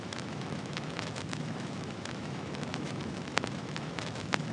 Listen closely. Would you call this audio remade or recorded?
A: remade